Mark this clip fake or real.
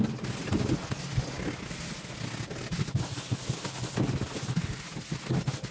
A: real